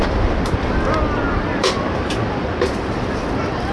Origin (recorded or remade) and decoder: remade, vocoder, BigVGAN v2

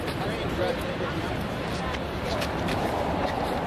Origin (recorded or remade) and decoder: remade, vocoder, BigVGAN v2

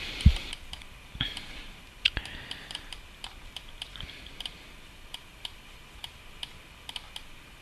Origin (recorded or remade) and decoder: remade, vocoder, BigVGAN v2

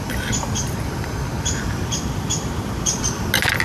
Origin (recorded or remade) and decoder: recorded